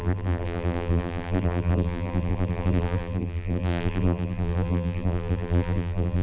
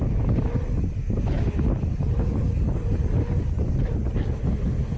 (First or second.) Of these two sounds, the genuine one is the second